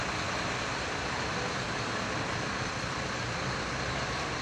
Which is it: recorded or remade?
remade